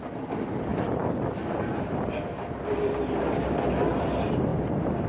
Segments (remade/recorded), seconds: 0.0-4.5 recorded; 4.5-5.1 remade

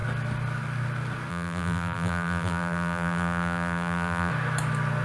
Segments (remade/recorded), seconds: 0.0-1.3 recorded; 1.3-4.3 remade; 4.3-5.0 recorded

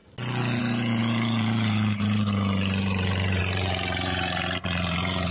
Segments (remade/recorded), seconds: 0.0-0.6 recorded; 0.6-5.3 remade

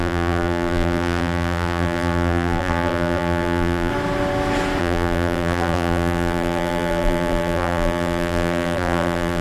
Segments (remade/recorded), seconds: 0.0-3.9 remade; 3.9-4.8 recorded; 4.8-9.4 remade

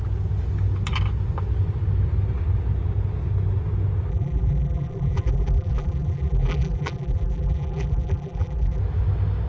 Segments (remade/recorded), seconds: 0.0-4.1 recorded; 4.1-8.8 remade; 8.8-9.5 recorded

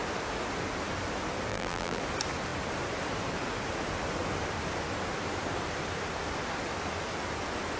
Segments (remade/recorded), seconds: 0.0-1.5 recorded; 1.5-2.0 remade; 2.0-7.8 recorded

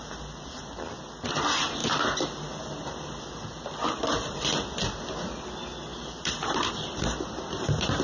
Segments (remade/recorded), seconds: 0.0-1.8 recorded; 1.8-3.2 remade; 3.2-5.9 recorded; 5.9-6.7 remade; 6.7-8.0 recorded